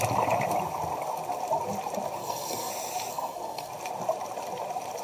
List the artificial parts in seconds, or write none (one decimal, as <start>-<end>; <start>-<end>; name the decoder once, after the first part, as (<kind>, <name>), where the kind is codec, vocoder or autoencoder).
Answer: 2.2-2.7 (codec, SNAC); 3.1-3.7